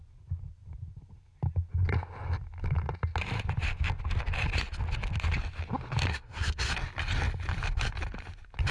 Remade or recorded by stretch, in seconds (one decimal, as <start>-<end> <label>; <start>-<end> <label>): 0.0-6.1 recorded; 6.1-6.7 remade; 6.7-8.7 recorded